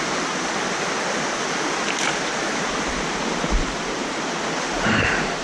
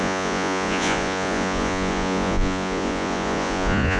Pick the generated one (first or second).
second